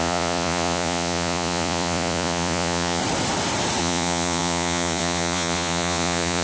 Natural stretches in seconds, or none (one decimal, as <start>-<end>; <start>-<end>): 3.0-3.8